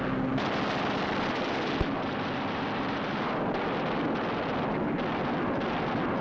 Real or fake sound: real